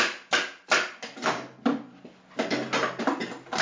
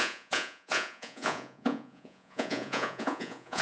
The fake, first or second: second